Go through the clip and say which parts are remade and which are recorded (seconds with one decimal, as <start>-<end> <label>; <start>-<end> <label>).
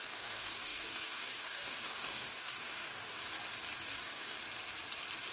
0.0-3.2 remade; 3.2-3.8 recorded; 3.8-4.4 remade; 4.4-5.3 recorded